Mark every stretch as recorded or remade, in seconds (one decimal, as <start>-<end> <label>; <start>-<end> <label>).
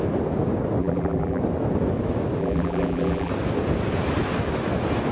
0.0-0.8 recorded; 0.8-1.4 remade; 1.4-2.4 recorded; 2.4-3.3 remade; 3.3-5.1 recorded